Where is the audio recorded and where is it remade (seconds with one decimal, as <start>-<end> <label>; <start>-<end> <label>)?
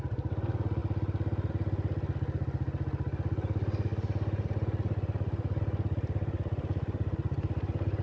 0.0-8.0 recorded